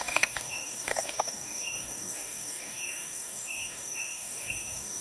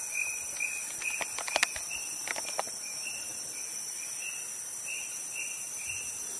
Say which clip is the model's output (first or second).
first